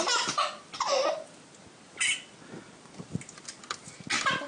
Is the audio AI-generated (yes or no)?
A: no